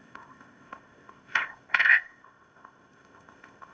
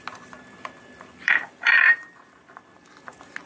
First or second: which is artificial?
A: first